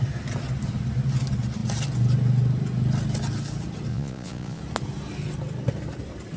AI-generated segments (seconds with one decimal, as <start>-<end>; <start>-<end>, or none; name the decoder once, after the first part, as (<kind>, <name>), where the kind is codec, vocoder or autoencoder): 3.9-4.6 (vocoder, Vocos)